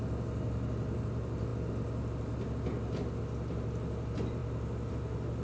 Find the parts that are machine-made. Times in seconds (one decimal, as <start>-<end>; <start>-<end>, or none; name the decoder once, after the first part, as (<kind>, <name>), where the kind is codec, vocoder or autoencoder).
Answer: none